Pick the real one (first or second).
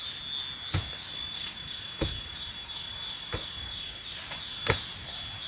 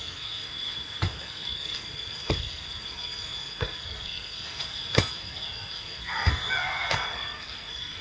first